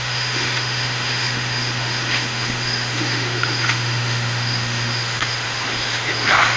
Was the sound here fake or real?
fake